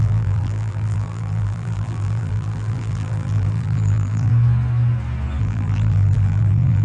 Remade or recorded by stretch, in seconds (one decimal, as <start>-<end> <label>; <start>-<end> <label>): 0.0-4.3 remade; 4.3-5.4 recorded; 5.4-6.8 remade